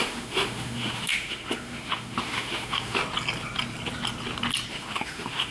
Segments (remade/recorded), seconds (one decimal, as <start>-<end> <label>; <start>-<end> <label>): 0.0-3.0 remade; 3.0-4.7 recorded; 4.7-5.5 remade